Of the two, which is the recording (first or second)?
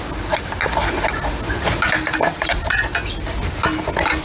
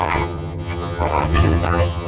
first